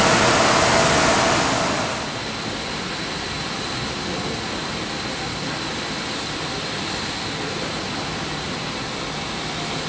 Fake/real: real